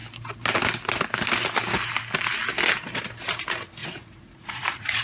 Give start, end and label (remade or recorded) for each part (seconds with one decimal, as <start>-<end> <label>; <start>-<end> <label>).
0.0-3.8 recorded; 3.8-5.0 remade